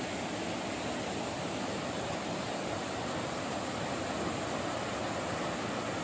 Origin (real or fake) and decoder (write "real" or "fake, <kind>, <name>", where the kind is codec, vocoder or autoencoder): real